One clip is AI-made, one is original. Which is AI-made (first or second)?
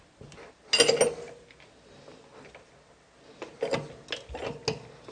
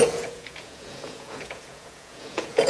second